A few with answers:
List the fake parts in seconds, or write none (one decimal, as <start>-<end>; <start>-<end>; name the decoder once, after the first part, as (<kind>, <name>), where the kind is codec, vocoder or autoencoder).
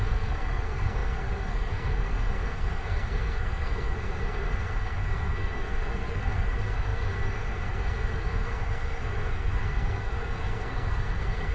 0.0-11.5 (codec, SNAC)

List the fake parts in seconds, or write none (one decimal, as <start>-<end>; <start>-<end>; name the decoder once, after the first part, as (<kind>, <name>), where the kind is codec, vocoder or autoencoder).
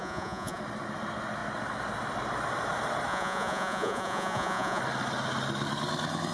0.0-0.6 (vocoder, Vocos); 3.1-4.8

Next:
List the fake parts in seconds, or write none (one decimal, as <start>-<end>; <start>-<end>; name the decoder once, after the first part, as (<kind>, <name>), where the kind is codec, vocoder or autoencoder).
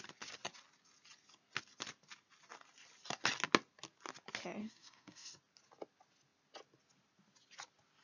4.6-5.4 (codec, DAC)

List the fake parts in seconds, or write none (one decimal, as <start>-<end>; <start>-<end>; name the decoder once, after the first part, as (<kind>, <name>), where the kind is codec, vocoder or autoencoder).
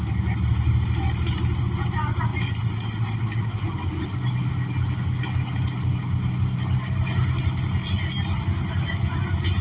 none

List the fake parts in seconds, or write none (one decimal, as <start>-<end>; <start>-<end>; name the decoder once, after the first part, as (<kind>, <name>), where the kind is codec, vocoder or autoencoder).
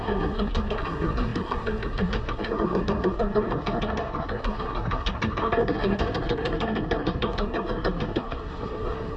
0.0-9.2 (codec, SNAC)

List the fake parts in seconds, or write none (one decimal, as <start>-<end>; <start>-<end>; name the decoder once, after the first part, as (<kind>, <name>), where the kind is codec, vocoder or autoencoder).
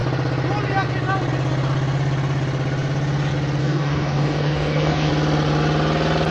3.6-5.1 (codec, DAC)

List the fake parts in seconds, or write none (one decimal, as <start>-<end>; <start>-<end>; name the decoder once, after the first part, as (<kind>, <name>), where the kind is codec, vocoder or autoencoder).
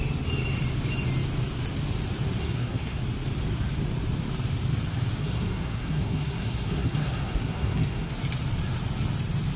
2.4-3.0 (codec, SNAC); 5.2-8.1